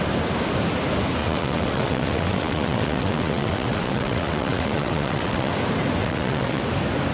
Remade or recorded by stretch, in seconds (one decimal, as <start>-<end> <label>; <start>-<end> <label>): 0.0-1.2 recorded; 1.2-5.5 remade; 5.5-6.0 recorded; 6.0-6.6 remade; 6.6-7.1 recorded

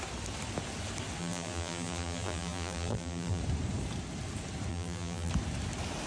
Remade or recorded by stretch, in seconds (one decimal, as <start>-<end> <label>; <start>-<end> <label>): 0.0-1.2 recorded; 1.2-3.4 remade; 3.4-4.7 recorded; 4.7-5.3 remade; 5.3-6.1 recorded

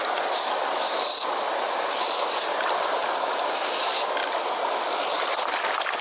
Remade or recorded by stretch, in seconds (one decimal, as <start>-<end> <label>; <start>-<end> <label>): 0.0-6.0 recorded